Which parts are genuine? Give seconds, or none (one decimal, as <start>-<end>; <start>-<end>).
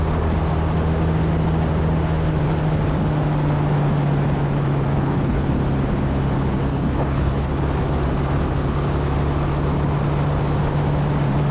0.0-4.9; 5.5-6.7; 7.5-11.5